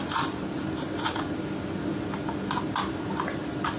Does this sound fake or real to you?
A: real